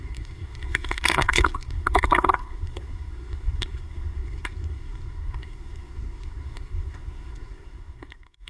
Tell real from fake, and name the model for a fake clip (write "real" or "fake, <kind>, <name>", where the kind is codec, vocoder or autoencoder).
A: fake, codec, SNAC